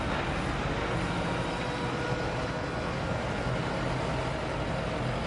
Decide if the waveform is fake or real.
real